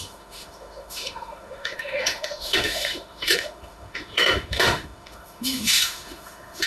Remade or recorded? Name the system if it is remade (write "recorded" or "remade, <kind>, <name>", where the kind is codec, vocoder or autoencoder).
remade, autoencoder, DAC-VAE